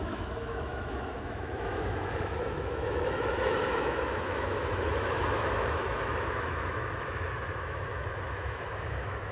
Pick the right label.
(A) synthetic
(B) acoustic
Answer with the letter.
A